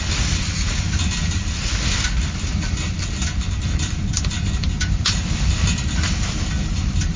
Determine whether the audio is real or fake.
real